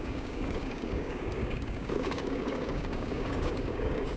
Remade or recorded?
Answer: remade